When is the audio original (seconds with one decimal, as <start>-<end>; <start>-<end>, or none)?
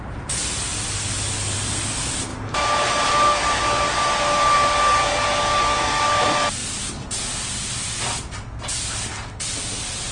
0.0-2.3; 5.1-10.1